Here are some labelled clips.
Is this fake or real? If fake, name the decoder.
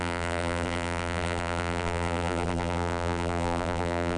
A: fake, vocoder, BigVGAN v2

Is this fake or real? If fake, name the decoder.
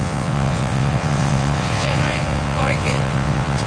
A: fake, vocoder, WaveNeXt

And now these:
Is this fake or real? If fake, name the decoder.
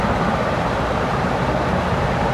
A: real